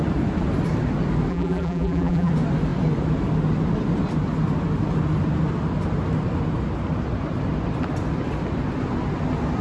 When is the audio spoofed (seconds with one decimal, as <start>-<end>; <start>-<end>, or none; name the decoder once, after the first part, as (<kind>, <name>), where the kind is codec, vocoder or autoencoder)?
1.3-2.3 (vocoder, BigVGAN v2)